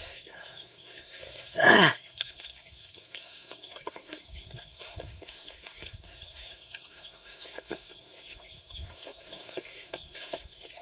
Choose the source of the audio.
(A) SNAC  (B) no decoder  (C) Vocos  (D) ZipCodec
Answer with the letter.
A